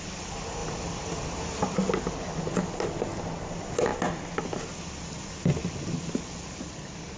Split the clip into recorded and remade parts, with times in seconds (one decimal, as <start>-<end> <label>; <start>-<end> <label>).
0.0-7.2 recorded